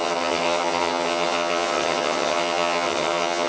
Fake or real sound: fake